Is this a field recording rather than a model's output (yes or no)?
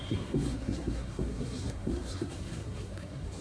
no